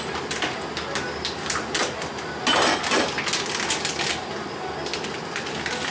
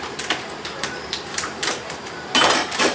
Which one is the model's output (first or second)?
second